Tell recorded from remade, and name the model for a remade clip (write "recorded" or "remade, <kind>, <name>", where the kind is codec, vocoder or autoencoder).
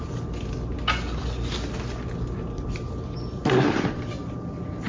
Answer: recorded